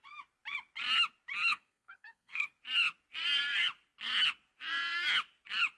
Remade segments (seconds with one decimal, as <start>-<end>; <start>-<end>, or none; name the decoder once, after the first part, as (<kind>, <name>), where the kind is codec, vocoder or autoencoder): 1.5-2.5 (codec, SNAC)